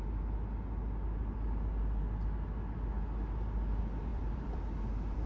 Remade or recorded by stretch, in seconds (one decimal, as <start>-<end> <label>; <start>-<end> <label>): 0.0-4.1 recorded; 4.1-5.3 remade